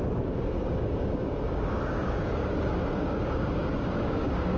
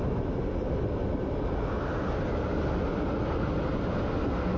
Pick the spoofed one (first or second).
first